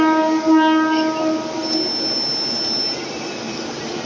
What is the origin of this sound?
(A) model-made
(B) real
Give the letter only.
B